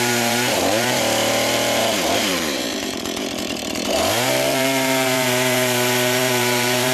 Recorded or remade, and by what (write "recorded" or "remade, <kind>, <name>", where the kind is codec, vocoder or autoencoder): remade, vocoder, BigVGAN v2